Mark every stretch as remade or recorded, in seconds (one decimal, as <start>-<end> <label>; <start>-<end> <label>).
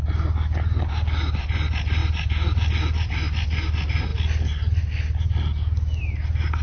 0.0-6.6 recorded